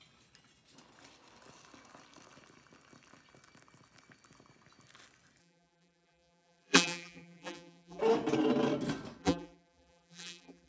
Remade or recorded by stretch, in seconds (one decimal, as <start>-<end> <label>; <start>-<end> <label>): 0.0-5.4 recorded; 5.4-8.0 remade; 8.0-9.2 recorded; 9.2-10.7 remade